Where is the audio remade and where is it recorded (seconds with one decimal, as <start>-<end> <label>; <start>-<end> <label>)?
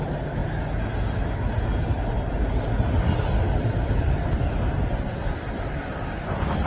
0.0-6.7 recorded